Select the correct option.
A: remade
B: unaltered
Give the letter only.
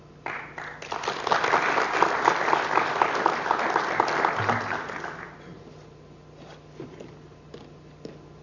B